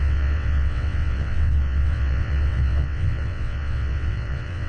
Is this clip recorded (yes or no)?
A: no